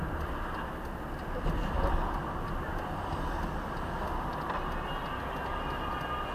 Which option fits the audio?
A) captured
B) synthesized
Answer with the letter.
A